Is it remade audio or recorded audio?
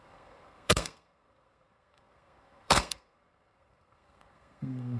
remade